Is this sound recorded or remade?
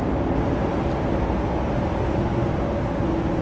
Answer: recorded